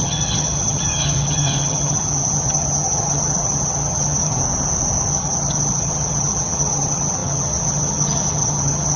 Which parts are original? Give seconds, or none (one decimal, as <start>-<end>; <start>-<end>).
4.4-5.1